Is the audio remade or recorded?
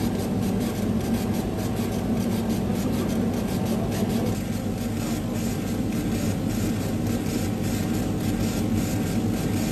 recorded